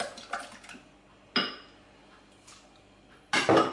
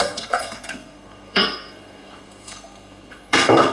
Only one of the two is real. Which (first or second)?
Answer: first